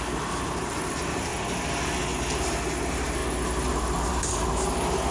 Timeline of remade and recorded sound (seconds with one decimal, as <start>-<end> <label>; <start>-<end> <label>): 0.0-1.3 remade; 1.3-2.4 recorded; 2.4-3.2 remade; 3.2-3.7 recorded; 3.7-5.1 remade